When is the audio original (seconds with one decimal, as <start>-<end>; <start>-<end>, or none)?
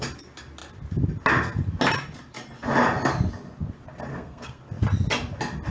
0.0-4.1; 4.6-5.7